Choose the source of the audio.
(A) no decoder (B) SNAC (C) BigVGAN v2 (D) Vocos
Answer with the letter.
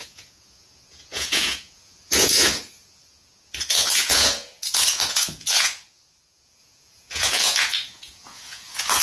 D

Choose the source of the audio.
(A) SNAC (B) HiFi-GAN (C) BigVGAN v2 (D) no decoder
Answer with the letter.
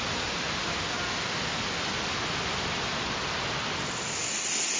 D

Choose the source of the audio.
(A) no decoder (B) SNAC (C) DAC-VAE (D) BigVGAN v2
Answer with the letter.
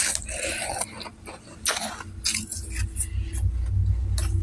A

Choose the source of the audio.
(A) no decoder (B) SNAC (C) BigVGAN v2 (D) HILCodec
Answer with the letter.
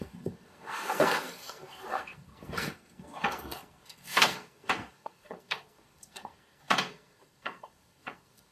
B